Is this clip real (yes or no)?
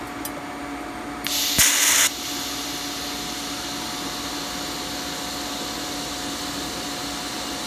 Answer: yes